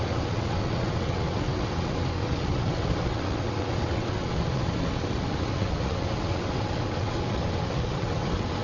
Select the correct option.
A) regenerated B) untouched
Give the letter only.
A